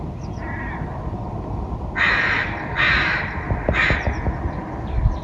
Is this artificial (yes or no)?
no